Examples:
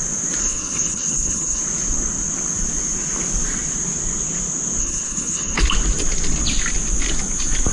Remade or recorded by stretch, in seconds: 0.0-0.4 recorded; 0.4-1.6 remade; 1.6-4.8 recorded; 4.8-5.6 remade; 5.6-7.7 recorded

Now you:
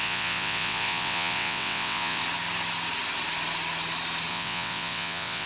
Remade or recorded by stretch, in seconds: 0.0-2.2 remade; 2.2-4.3 recorded; 4.3-5.5 remade